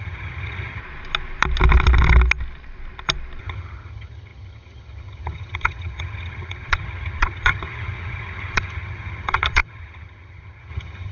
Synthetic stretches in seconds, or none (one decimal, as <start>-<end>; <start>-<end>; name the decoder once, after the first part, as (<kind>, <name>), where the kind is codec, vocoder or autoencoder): 0.0-0.8 (vocoder, HiFi-GAN); 3.4-11.1